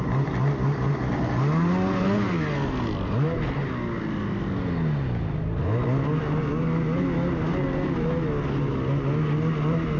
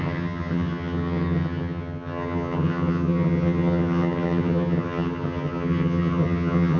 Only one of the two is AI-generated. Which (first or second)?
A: second